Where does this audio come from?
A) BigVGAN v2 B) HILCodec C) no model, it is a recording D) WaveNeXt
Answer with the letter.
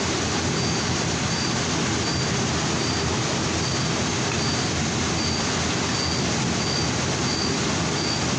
C